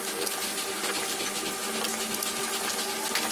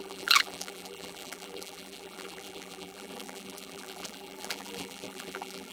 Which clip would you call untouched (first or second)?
first